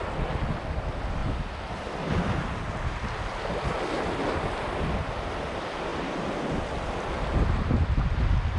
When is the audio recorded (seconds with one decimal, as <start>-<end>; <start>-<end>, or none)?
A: 0.0-1.2; 2.2-8.6